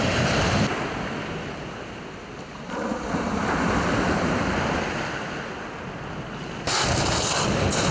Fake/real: fake